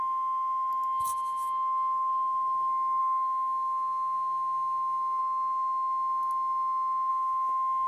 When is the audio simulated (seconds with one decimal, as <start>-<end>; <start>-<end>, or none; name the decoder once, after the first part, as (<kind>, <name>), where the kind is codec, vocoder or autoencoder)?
3.0-5.2 (autoencoder, DAC-VAE); 7.1-7.9